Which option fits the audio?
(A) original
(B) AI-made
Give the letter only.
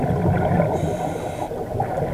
A